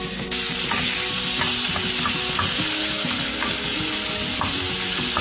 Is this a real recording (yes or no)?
yes